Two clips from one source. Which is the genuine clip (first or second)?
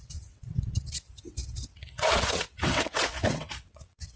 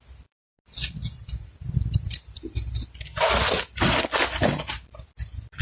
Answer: second